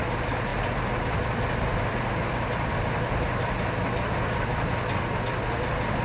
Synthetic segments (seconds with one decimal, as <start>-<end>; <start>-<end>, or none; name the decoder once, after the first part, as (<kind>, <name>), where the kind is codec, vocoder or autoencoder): none